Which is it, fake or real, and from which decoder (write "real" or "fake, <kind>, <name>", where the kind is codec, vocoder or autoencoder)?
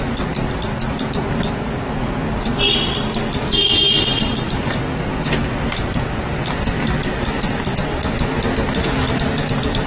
real